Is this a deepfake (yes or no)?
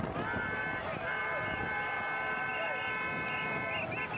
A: no